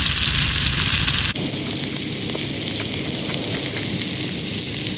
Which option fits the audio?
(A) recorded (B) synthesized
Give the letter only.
A